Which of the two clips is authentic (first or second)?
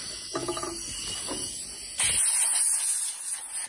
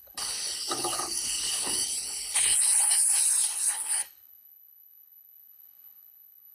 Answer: first